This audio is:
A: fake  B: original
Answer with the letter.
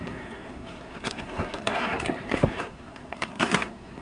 A